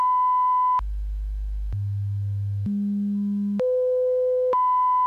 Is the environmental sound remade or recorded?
recorded